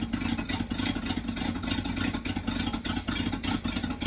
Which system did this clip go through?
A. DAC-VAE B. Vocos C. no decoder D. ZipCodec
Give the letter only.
C